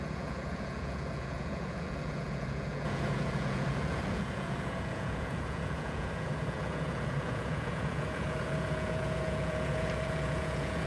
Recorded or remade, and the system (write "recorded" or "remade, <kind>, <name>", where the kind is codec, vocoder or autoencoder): remade, vocoder, Vocos